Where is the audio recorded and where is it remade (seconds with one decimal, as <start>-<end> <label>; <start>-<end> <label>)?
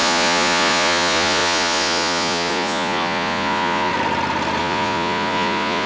0.0-3.9 remade; 3.9-4.6 recorded; 4.6-5.9 remade